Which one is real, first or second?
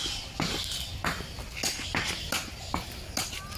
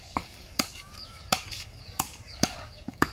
first